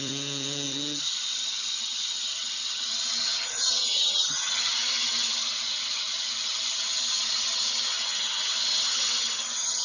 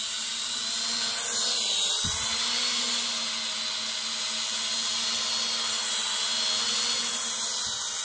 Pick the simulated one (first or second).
first